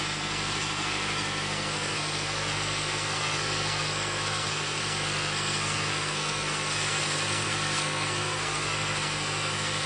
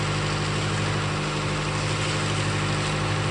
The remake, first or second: first